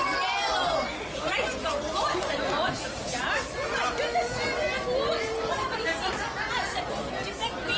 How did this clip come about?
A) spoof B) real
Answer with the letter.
B